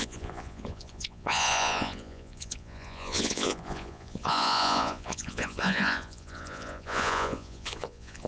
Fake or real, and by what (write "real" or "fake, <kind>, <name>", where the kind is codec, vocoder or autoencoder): fake, vocoder, Vocos